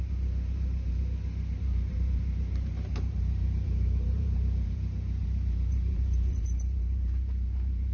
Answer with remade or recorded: remade